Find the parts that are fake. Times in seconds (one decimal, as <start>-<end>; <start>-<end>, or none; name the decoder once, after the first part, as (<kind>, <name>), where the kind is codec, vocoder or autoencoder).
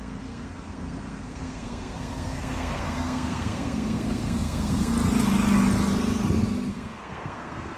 0.0-4.9 (codec, SNAC); 6.7-7.8